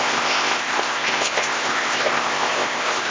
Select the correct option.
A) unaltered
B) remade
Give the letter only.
B